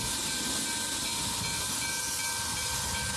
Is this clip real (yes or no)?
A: yes